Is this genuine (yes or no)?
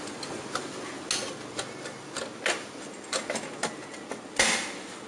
yes